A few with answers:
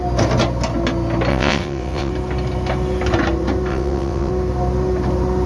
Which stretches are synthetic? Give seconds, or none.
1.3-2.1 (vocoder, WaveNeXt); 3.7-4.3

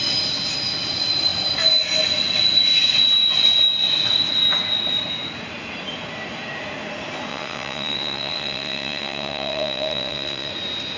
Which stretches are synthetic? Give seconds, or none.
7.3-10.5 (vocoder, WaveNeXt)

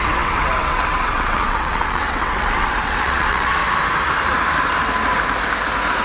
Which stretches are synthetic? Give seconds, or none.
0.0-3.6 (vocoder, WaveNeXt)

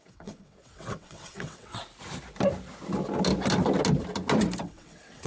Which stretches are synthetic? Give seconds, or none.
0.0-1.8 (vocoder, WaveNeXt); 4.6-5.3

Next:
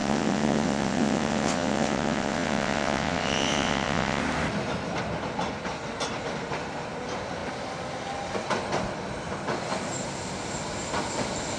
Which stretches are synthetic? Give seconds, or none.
0.0-4.2 (vocoder, WaveNeXt)

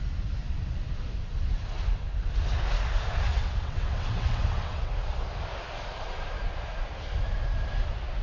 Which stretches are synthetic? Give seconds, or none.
3.3-4.9 (vocoder, WaveNeXt)

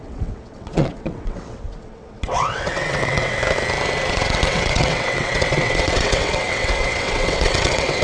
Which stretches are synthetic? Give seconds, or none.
0.0-3.4 (vocoder, WaveNeXt); 4.1-8.0

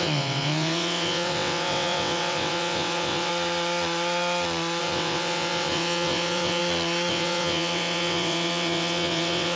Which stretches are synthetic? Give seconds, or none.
0.0-3.3 (vocoder, WaveNeXt); 4.8-6.6; 7.1-9.6